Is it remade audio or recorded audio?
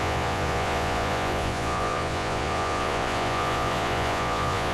remade